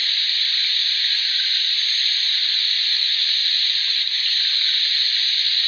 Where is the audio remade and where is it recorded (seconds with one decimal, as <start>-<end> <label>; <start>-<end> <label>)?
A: 0.0-5.7 recorded